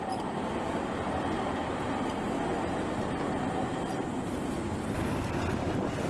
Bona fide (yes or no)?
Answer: yes